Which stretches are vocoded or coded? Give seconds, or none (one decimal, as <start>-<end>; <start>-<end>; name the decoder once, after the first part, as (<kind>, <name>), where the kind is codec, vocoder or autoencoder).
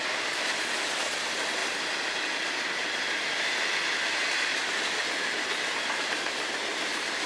none